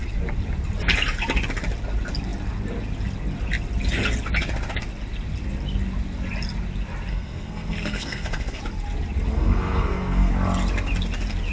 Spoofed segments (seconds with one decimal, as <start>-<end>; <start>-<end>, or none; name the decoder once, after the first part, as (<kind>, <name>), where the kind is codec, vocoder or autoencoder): 7.1-8.6 (codec, SNAC); 9.3-10.3